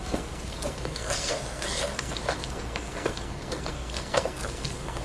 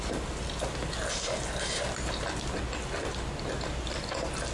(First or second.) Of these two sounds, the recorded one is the second